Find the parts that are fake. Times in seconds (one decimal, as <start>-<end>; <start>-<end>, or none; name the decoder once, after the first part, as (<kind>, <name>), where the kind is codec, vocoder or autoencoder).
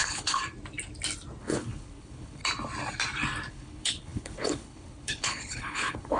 0.0-0.4 (codec, HILCodec); 1.4-2.4; 3.5-6.2